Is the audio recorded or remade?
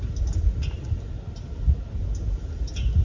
recorded